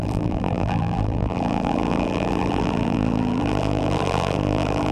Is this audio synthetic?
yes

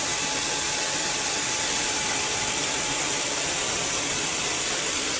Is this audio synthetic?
yes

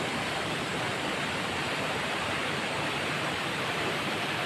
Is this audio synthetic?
yes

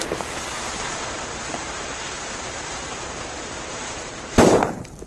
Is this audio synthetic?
yes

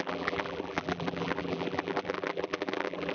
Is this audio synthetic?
yes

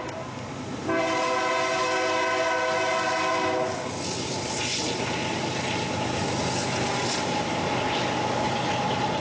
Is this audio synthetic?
no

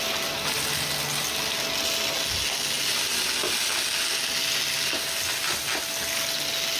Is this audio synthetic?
no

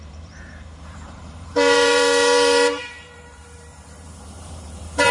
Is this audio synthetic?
yes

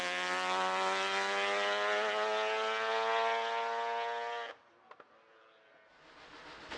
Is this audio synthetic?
no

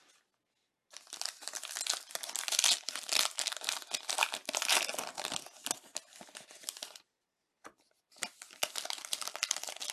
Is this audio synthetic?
no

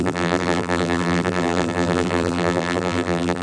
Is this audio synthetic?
yes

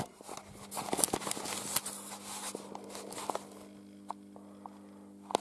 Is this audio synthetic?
no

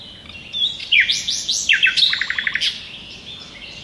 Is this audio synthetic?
no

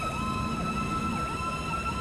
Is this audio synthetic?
no